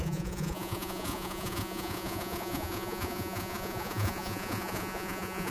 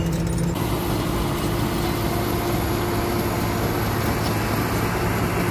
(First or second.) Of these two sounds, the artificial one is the first